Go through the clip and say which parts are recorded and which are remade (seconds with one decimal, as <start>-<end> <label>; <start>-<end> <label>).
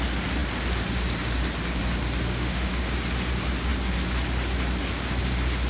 0.0-2.3 recorded; 2.3-2.9 remade; 2.9-5.7 recorded